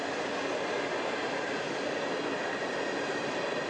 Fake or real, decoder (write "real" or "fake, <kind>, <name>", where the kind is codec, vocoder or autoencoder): real